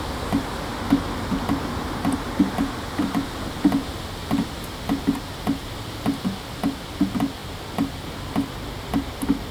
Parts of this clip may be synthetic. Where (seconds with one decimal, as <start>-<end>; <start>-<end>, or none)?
none